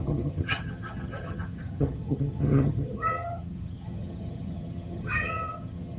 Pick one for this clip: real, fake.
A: fake